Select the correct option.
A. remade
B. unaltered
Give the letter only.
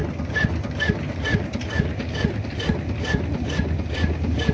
B